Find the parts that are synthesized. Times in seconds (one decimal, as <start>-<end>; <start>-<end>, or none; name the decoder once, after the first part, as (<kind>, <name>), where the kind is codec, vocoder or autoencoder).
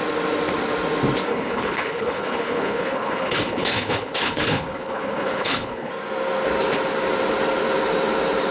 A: 1.3-5.9 (codec, HILCodec)